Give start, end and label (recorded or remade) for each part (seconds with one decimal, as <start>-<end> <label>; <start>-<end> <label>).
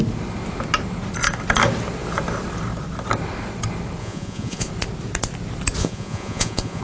0.0-4.0 recorded; 4.0-4.7 remade; 4.7-5.8 recorded; 5.8-6.8 remade